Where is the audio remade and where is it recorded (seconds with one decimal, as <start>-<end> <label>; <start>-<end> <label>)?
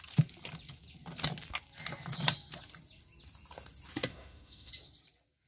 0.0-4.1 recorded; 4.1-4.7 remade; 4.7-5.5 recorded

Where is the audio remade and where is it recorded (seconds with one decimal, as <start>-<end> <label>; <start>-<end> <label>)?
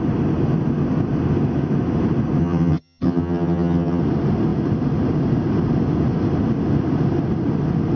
0.0-2.4 recorded; 2.4-4.0 remade; 4.0-8.0 recorded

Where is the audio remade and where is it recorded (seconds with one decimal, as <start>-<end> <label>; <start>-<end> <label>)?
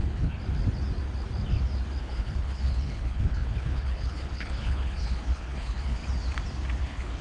0.0-0.4 remade; 0.4-2.0 recorded; 2.0-6.0 remade; 6.0-6.8 recorded; 6.8-7.2 remade